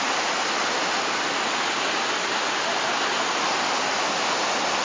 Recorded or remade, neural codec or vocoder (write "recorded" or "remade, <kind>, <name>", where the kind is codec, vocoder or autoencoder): recorded